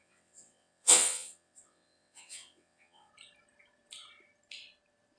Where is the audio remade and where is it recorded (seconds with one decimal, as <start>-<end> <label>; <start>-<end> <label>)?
0.0-3.1 remade; 3.1-5.2 recorded